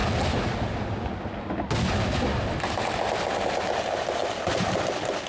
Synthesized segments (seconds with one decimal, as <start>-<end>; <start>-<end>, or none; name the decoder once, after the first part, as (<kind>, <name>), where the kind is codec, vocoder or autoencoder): none